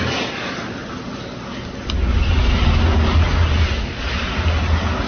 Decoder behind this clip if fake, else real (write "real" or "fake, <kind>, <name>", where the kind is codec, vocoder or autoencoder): real